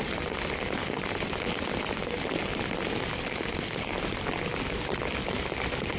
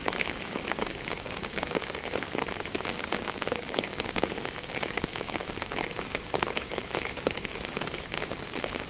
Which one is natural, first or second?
first